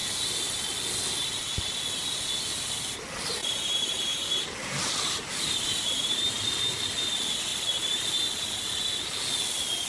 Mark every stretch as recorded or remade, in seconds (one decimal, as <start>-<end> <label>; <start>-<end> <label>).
0.0-3.4 recorded; 3.4-6.4 remade; 6.4-9.9 recorded